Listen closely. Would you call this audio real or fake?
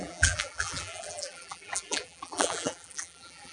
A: fake